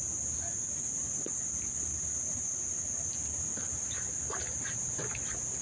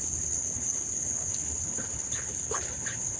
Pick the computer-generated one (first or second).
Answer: second